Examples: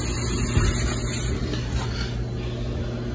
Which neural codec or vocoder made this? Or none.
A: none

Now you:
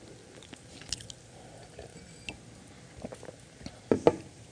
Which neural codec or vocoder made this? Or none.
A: none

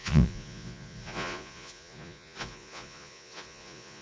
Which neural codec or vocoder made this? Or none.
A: vocoder, Vocos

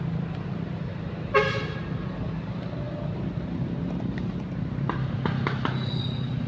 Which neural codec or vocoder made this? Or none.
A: none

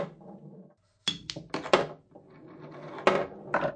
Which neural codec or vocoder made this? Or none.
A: none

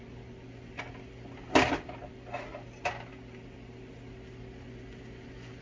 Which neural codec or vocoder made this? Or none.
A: none